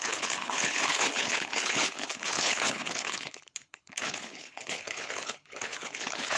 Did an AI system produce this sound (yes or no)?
yes